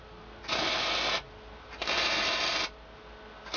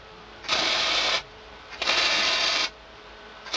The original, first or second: first